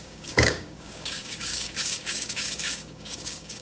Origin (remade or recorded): remade